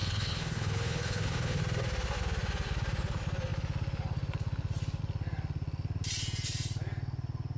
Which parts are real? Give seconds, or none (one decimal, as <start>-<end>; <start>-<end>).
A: 1.6-7.6